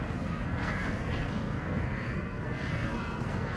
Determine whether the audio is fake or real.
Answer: fake